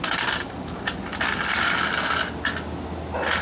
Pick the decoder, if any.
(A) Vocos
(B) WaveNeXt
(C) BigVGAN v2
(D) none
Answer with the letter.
D